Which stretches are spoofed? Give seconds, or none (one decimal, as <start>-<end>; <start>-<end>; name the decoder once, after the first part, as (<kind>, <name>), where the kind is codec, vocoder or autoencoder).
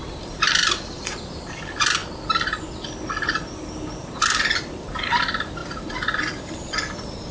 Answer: 0.0-2.0 (vocoder, BigVGAN v2); 4.6-7.3